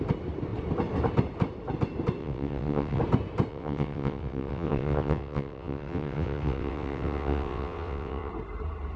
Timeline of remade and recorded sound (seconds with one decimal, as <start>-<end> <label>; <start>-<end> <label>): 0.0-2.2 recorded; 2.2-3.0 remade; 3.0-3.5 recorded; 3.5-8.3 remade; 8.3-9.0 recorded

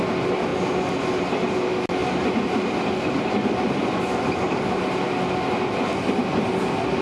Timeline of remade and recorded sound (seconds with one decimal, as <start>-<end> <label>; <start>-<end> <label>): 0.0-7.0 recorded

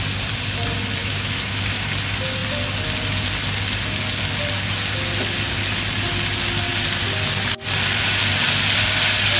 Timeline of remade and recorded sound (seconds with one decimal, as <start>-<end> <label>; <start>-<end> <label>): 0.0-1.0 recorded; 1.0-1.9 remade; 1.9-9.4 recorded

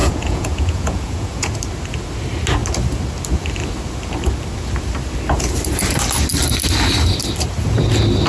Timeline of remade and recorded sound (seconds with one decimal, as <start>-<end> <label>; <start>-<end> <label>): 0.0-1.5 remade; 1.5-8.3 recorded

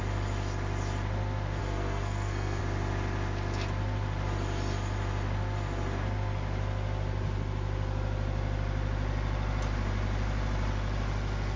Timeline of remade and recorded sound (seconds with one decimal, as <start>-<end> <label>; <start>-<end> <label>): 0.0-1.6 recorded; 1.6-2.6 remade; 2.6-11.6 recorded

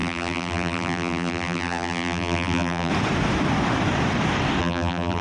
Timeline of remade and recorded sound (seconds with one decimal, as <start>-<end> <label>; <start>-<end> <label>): 0.0-2.9 remade; 2.9-4.6 recorded; 4.6-5.2 remade

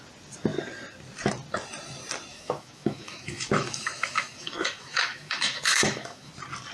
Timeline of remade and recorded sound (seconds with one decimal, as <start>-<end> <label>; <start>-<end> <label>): 0.0-2.3 recorded; 2.3-6.3 remade; 6.3-6.7 recorded